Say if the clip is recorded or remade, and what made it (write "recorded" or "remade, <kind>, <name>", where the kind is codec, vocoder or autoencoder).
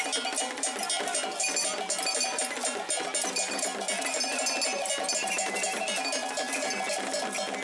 recorded